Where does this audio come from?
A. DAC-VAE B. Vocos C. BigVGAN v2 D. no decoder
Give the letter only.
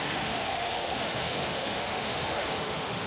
A